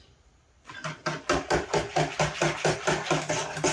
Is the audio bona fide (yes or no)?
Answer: yes